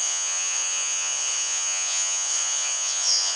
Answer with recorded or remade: remade